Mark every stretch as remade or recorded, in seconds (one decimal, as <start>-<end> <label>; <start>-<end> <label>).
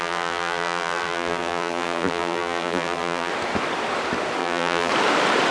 0.0-3.3 remade; 3.3-4.4 recorded; 4.4-4.9 remade; 4.9-5.5 recorded